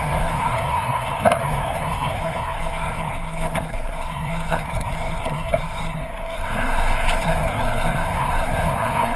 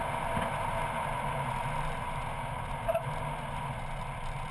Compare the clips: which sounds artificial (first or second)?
first